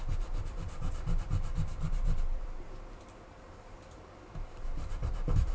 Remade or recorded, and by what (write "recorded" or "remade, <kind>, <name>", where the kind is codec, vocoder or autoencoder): remade, vocoder, BigVGAN v2